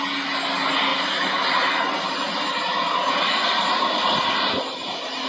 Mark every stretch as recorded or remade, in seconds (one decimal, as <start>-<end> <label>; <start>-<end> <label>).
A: 0.0-5.3 recorded

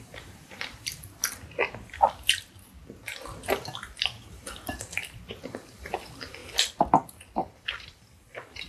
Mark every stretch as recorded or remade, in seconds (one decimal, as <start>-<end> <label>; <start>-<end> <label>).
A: 0.0-1.2 remade; 1.2-4.3 recorded; 4.3-6.4 remade; 6.4-7.4 recorded; 7.4-8.7 remade

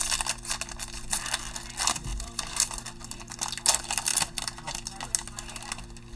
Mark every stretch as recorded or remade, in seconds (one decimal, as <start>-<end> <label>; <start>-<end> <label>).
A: 0.0-2.1 recorded; 2.1-2.8 remade; 2.8-6.2 recorded

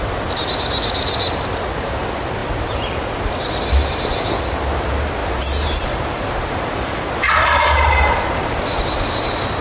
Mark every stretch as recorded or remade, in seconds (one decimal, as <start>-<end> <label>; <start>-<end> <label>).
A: 0.0-5.2 recorded; 5.2-8.8 remade; 8.8-9.6 recorded

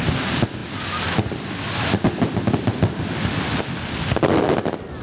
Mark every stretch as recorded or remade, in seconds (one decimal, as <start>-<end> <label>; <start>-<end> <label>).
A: 0.0-4.0 remade; 4.0-5.0 recorded

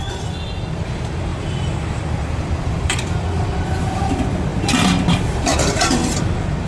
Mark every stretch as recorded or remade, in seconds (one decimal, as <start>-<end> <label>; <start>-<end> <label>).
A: 0.0-1.3 recorded; 1.3-4.1 remade; 4.1-4.5 recorded; 4.5-6.2 remade; 6.2-6.7 recorded

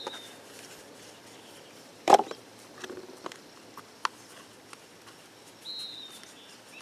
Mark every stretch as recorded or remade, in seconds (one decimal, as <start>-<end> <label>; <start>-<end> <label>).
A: 0.0-1.9 recorded; 1.9-3.5 remade; 3.5-6.8 recorded